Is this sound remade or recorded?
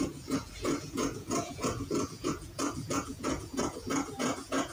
remade